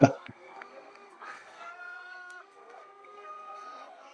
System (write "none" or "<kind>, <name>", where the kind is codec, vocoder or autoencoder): codec, SNAC